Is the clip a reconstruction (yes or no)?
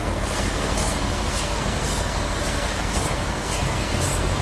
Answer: yes